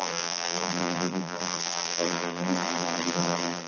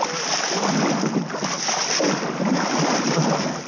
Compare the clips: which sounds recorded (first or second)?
second